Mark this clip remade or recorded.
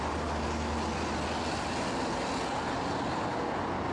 recorded